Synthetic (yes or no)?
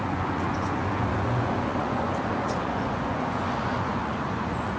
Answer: yes